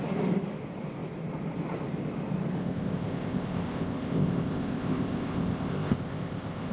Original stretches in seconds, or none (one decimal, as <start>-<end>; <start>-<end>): 0.0-2.6